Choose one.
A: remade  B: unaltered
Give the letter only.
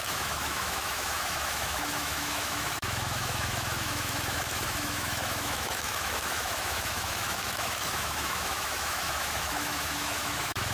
A